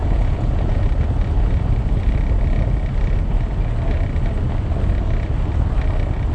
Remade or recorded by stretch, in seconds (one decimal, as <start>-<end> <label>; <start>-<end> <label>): 0.0-0.8 remade; 0.8-6.3 recorded

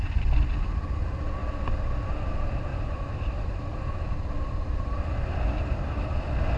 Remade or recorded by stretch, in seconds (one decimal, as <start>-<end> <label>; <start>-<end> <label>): 0.0-2.7 recorded; 2.7-3.8 remade; 3.8-6.6 recorded

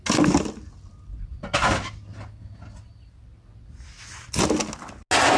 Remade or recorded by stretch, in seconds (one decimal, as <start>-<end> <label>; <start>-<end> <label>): 0.0-1.3 recorded; 1.3-2.4 remade; 2.4-5.4 recorded

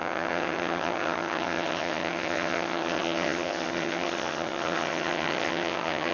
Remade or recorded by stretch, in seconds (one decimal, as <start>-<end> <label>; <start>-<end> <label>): 0.0-6.1 remade